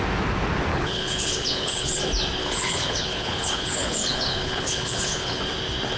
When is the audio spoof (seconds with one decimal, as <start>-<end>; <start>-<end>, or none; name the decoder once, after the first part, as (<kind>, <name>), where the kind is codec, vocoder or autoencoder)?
0.7-2.0 (codec, HILCodec); 2.4-5.4